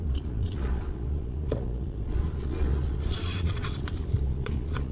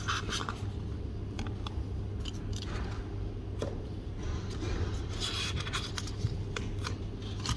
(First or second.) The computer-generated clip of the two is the first